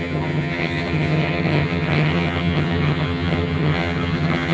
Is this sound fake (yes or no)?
yes